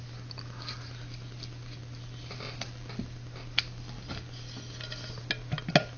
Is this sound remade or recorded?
recorded